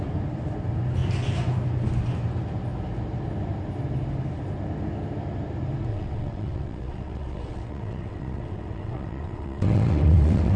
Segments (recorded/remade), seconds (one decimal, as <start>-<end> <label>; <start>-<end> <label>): 0.0-5.9 recorded; 5.9-10.6 remade